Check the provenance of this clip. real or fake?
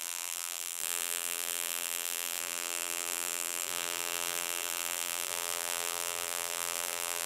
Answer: fake